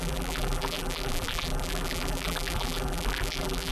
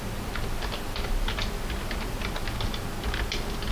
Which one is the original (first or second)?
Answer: second